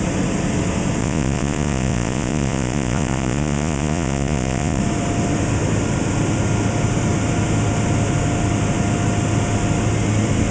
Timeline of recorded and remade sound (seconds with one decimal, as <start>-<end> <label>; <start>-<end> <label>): 0.0-1.0 recorded; 1.0-4.8 remade; 4.8-10.5 recorded